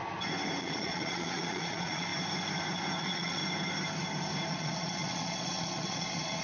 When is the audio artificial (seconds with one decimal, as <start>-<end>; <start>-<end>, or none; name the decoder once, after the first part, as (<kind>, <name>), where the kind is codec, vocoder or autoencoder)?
0.6-2.1 (vocoder, Vocos); 3.0-3.4; 4.5-6.4